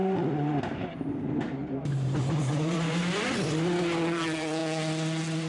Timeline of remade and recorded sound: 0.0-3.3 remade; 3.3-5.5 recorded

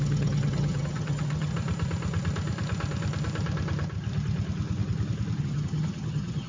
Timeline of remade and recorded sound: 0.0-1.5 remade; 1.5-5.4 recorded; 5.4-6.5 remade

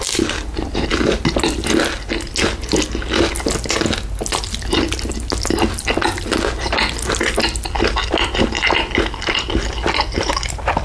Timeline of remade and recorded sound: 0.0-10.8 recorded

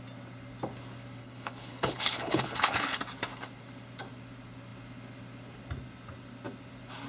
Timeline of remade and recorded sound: 0.0-1.2 recorded; 1.2-3.0 remade; 3.0-7.1 recorded

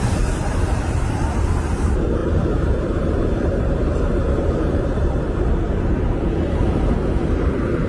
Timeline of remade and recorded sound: 0.0-7.9 remade